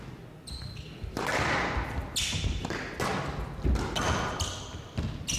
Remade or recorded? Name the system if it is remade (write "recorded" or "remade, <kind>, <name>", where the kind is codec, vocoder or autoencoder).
recorded